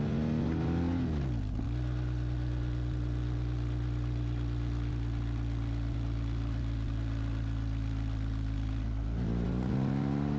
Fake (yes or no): no